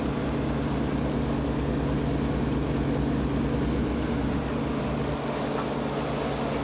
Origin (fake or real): real